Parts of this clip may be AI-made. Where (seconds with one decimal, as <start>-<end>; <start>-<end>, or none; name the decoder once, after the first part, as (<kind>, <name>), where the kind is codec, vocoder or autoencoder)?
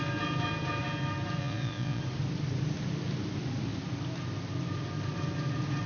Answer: 1.4-2.0 (vocoder, Vocos)